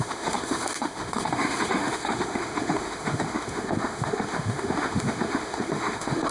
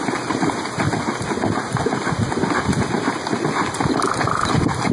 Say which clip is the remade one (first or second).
first